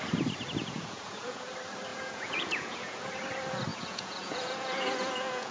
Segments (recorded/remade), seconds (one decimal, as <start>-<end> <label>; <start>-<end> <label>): 0.0-0.6 recorded; 0.6-1.5 remade; 1.5-1.9 recorded; 1.9-3.1 remade; 3.1-3.7 recorded; 3.7-5.5 remade